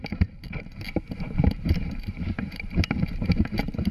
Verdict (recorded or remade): remade